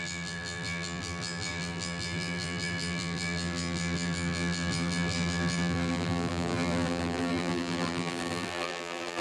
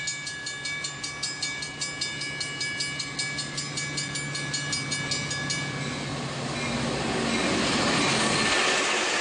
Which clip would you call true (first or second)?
second